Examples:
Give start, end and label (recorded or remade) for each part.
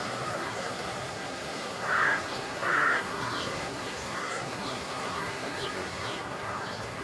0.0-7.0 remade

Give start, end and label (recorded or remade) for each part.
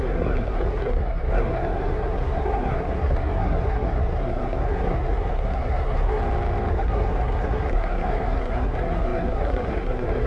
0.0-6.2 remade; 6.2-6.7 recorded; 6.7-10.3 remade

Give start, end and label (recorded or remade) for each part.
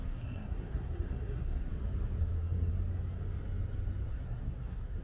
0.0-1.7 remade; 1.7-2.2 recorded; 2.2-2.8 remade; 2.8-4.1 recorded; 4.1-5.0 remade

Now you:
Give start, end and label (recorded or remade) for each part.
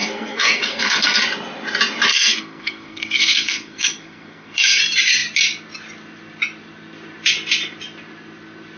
0.0-1.2 remade; 1.2-2.1 recorded; 2.1-4.8 remade; 4.8-8.8 recorded